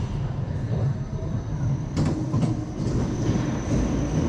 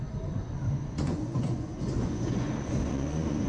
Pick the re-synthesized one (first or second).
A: second